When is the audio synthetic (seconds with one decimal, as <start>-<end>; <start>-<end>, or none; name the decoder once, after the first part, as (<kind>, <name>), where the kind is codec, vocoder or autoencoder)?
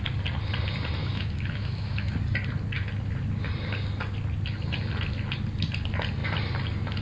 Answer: 1.0-2.1 (autoencoder, DAC-VAE)